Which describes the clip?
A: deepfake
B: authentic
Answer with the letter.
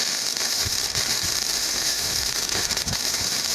A